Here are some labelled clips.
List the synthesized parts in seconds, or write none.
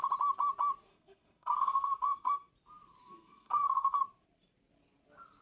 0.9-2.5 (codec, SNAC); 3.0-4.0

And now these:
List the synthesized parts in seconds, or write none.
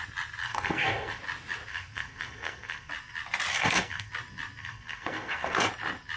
0.4-1.2 (codec, SNAC); 1.7-2.9; 3.5-4.1; 4.6-5.7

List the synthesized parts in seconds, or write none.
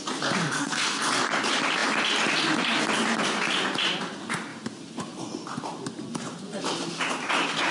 0.4-1.1 (codec, SNAC)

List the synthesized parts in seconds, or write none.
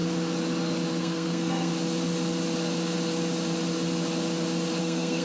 1.0-1.7 (codec, SNAC); 4.8-5.2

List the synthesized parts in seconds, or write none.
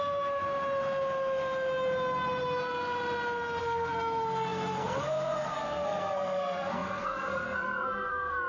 0.0-0.4 (codec, SNAC); 3.6-8.5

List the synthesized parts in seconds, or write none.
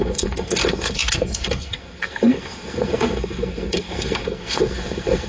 0.0-5.3 (codec, SNAC)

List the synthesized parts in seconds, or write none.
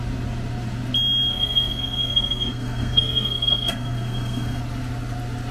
1.3-4.6 (codec, SNAC)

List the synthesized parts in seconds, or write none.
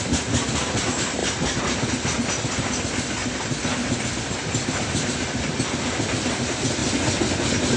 none